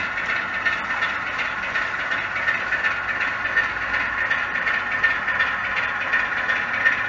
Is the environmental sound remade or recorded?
recorded